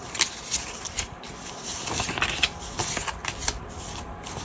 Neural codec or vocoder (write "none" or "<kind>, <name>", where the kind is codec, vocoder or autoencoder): none